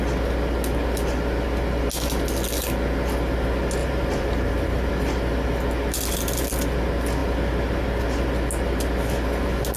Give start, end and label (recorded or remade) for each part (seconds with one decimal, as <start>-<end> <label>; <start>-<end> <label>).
0.0-3.8 recorded; 3.8-4.9 remade; 4.9-9.8 recorded